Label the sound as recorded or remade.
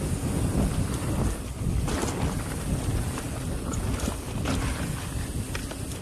recorded